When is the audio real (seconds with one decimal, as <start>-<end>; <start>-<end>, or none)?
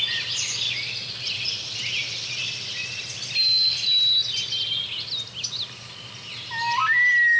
0.0-7.4